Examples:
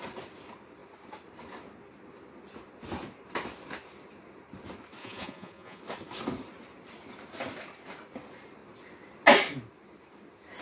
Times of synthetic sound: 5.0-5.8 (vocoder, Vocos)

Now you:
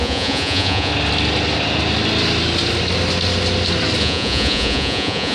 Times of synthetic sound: 0.0-0.9 (vocoder, Vocos); 4.0-5.3

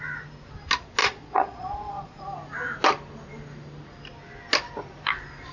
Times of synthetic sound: 1.0-2.2 (vocoder, Vocos)

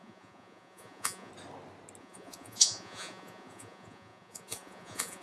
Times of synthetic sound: 0.0-1.3 (vocoder, Vocos); 2.0-5.2

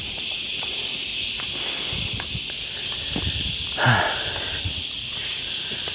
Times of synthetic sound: 0.0-1.1 (vocoder, Vocos); 4.6-5.9

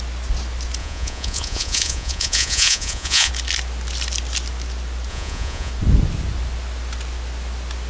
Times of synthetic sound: 0.8-3.3 (vocoder, Vocos); 5.1-5.7

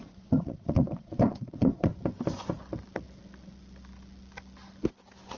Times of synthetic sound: 0.0-1.9 (vocoder, Vocos)